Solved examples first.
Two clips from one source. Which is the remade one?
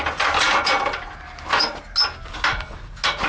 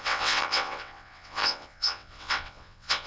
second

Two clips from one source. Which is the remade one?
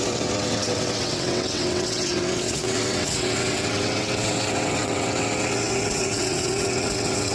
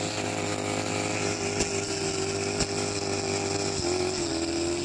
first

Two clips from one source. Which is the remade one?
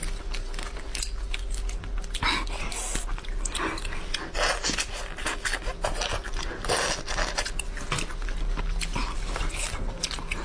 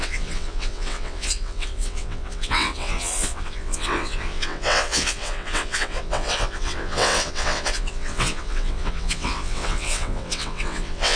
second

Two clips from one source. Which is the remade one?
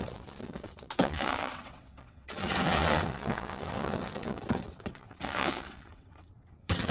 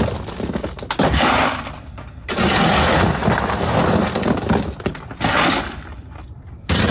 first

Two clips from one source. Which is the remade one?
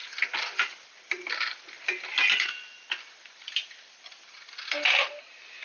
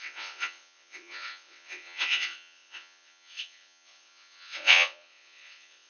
second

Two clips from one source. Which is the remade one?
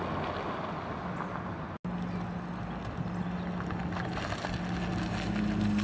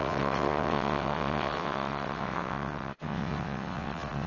second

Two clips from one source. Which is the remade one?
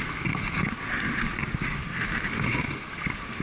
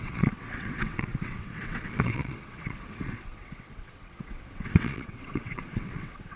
second